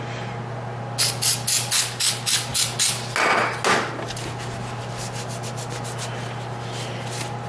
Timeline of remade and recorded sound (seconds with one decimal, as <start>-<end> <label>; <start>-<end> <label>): 0.0-7.5 recorded